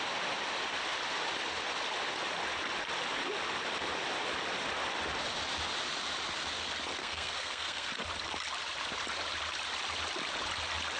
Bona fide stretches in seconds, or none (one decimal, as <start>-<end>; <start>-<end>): 0.0-7.0; 7.9-11.0